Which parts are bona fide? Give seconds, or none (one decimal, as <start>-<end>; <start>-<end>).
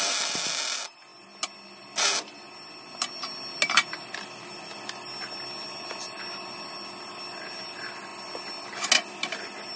0.0-9.8